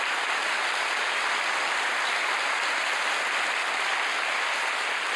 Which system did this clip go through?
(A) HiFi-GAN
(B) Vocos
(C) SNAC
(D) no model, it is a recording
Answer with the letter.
D